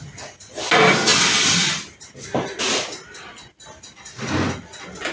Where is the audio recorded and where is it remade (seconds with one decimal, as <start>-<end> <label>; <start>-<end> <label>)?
0.0-5.1 recorded